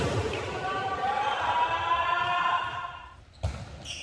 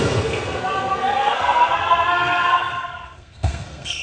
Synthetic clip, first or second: second